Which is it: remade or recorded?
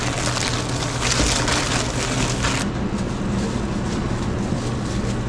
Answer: recorded